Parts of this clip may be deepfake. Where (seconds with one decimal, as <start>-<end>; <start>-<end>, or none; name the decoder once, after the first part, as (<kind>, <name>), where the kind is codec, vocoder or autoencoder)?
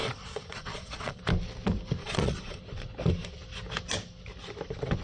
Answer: 0.0-1.2 (vocoder, Vocos); 2.0-2.6